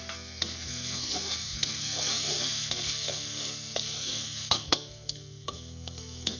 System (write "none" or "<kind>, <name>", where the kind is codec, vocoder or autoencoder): codec, SNAC